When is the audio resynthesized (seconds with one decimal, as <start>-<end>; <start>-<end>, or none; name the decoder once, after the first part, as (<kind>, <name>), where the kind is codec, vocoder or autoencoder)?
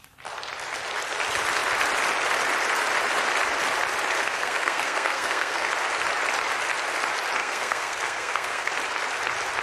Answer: 4.2-5.7 (codec, SNAC); 7.4-8.7